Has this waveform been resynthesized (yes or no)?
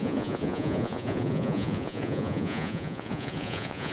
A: yes